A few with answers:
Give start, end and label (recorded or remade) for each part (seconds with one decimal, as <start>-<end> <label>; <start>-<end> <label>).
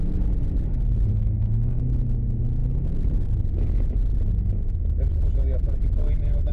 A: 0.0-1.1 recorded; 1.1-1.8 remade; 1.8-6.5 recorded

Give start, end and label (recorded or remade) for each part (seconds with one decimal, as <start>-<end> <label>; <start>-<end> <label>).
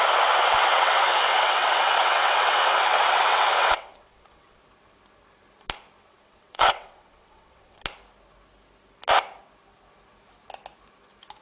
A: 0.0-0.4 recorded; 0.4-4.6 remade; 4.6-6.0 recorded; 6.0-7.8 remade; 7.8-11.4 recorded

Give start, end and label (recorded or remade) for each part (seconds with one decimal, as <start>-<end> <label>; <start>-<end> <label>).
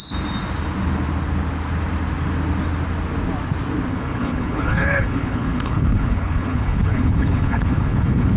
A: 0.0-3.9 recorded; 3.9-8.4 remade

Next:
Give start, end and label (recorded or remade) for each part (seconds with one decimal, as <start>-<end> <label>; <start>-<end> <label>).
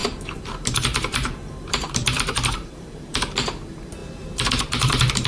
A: 0.0-3.2 remade; 3.2-4.0 recorded; 4.0-5.3 remade